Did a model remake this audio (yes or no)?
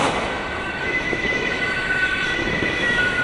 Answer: yes